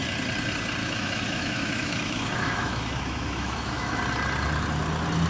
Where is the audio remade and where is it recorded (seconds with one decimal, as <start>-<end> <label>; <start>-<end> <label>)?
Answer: 0.0-0.8 recorded; 0.8-4.0 remade; 4.0-5.3 recorded